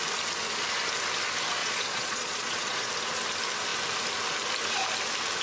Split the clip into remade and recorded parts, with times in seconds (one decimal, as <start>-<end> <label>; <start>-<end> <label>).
0.0-1.6 recorded; 1.6-2.9 remade; 2.9-5.4 recorded